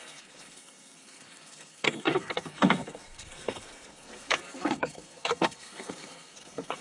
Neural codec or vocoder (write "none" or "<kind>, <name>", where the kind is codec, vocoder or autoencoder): codec, SNAC